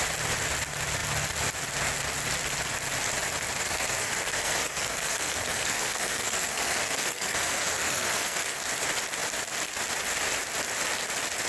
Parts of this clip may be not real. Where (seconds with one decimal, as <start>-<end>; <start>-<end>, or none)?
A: 3.6-8.6